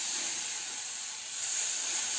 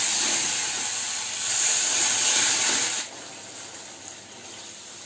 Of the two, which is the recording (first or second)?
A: second